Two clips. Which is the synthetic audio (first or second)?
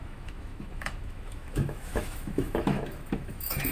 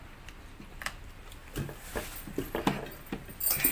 first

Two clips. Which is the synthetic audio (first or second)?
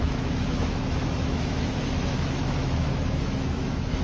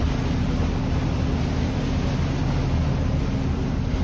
first